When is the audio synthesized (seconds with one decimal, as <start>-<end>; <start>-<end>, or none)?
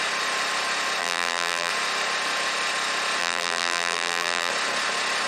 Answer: 1.0-1.7; 3.2-4.5